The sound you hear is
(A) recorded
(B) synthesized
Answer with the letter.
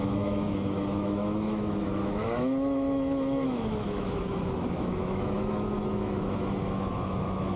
B